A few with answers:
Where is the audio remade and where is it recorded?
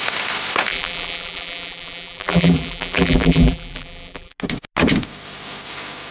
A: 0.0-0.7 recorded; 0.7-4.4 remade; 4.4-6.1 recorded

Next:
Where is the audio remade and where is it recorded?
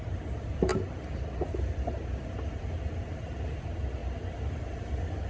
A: 0.0-5.3 recorded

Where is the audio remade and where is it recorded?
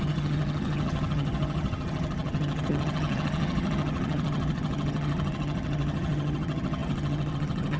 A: 0.0-7.8 remade